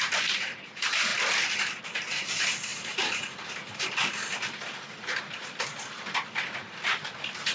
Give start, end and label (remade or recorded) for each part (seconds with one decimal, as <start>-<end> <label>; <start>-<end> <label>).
0.0-7.5 recorded